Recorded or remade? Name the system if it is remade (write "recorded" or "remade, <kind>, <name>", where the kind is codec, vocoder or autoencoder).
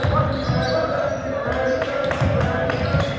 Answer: recorded